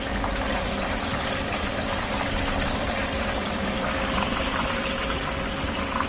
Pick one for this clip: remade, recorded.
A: recorded